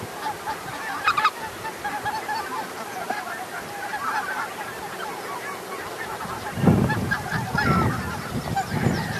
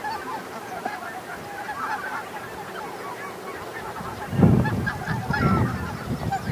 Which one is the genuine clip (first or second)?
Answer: second